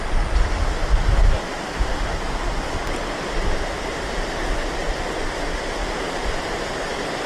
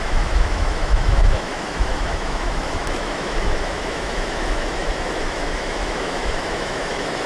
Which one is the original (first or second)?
first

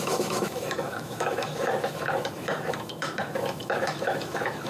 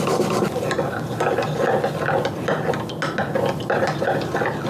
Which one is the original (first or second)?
second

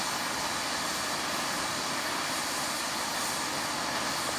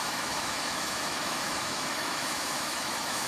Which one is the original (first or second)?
first